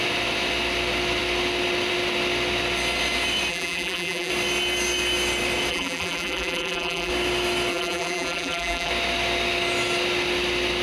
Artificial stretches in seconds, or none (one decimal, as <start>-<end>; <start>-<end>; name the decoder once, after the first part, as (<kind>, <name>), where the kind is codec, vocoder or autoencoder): 3.5-4.3 (vocoder, BigVGAN v2); 5.7-7.1; 7.7-8.9